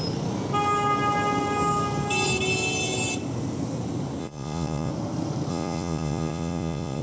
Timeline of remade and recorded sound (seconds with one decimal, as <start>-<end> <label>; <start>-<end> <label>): 0.0-4.2 recorded; 4.2-4.9 remade; 4.9-5.5 recorded; 5.5-7.0 remade